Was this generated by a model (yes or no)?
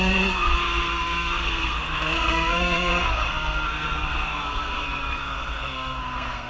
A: yes